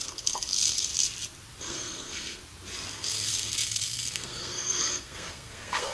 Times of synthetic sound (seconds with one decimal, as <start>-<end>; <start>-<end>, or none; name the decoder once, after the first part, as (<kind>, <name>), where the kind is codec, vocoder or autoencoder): 0.0-0.9 (codec, SNAC); 1.6-2.4; 2.9-5.9